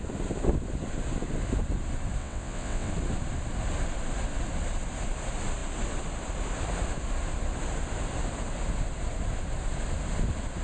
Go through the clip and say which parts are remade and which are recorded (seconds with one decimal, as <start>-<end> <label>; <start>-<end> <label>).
0.0-2.2 recorded; 2.2-2.9 remade; 2.9-10.6 recorded